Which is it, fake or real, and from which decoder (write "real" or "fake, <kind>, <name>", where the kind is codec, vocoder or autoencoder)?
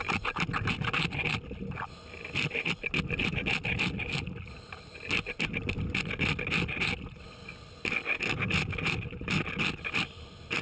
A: real